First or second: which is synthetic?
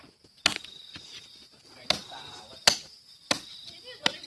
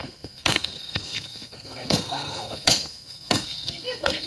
second